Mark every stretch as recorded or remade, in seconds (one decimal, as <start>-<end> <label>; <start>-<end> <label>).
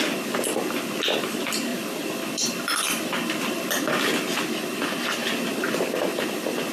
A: 0.0-1.7 recorded; 1.7-3.7 remade; 3.7-6.7 recorded